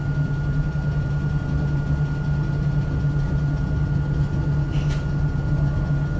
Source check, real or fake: real